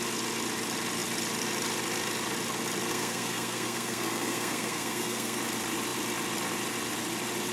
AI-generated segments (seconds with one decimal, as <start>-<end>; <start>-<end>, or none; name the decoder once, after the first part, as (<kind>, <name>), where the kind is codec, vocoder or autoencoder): 2.9-5.4 (codec, SNAC)